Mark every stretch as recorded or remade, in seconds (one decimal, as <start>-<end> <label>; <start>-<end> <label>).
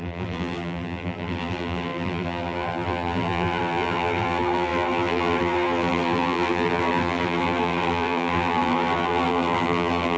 0.0-10.2 remade